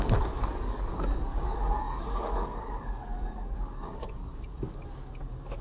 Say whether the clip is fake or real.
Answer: fake